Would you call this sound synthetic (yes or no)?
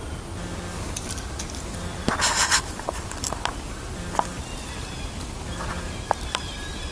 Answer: no